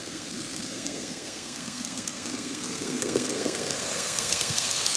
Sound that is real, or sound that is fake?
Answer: fake